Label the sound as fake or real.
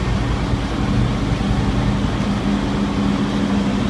real